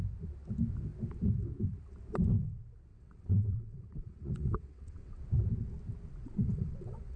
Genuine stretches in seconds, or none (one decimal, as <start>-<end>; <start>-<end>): 0.0-2.9; 5.2-6.2